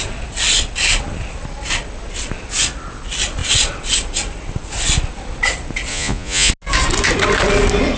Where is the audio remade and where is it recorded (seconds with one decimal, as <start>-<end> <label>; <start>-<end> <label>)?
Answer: 0.0-5.9 recorded; 5.9-6.5 remade; 6.5-8.0 recorded